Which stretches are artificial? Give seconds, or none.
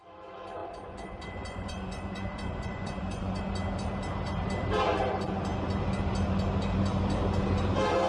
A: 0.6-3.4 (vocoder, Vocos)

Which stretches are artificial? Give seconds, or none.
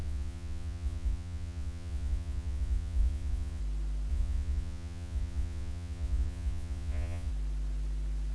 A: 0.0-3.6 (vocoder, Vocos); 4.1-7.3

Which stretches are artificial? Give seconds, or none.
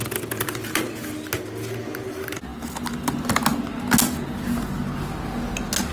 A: none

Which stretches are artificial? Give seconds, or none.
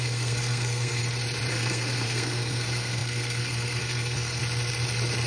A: 0.0-1.0 (codec, SNAC); 1.5-4.4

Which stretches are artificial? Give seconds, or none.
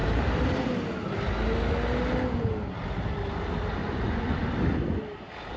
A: 3.8-4.5 (vocoder, Vocos)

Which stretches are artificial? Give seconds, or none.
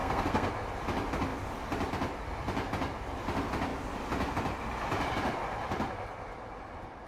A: 0.0-0.5 (codec, SNAC)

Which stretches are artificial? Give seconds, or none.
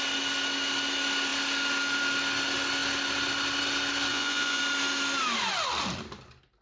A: 4.1-4.6 (vocoder, Vocos)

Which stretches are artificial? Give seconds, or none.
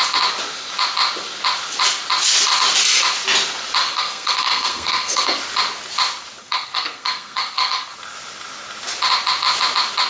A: 3.8-5.4 (codec, SNAC); 6.4-7.9